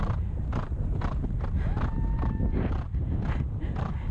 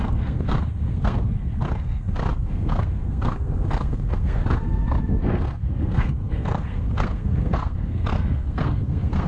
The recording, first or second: first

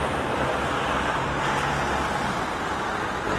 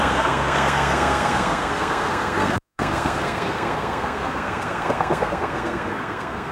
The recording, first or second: first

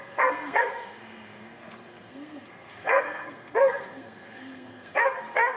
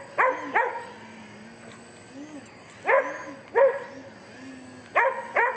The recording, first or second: second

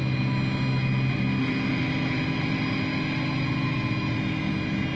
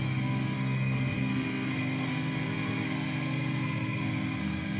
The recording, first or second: first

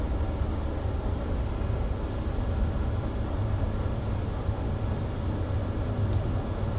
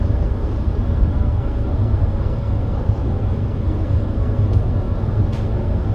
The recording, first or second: first